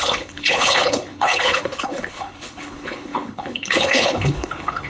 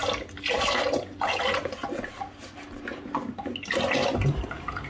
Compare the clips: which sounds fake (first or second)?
first